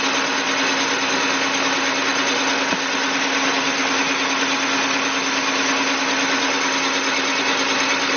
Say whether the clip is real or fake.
real